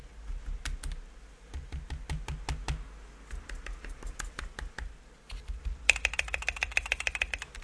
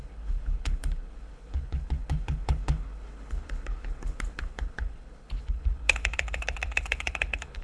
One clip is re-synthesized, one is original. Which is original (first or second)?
first